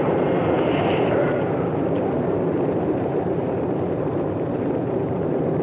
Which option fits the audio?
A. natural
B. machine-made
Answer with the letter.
B